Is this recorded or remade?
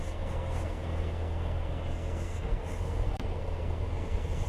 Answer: remade